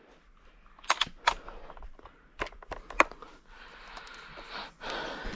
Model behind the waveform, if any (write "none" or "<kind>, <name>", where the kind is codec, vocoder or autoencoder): none